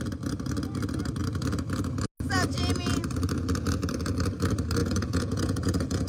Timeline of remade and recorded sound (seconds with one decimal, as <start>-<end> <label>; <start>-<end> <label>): 0.0-4.8 recorded; 4.8-6.1 remade